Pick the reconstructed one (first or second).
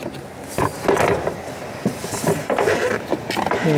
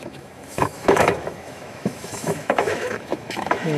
second